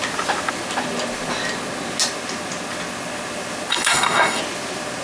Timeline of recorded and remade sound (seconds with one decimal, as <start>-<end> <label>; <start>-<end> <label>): 0.0-3.7 recorded; 3.7-4.4 remade; 4.4-5.0 recorded